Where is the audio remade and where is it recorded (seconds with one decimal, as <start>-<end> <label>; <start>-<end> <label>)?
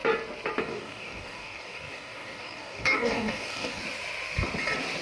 0.0-0.6 recorded; 0.6-3.8 remade; 3.8-5.0 recorded